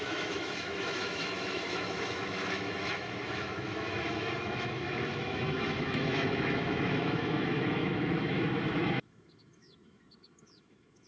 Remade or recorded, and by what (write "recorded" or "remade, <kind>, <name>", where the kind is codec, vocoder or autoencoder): remade, autoencoder, DAC-VAE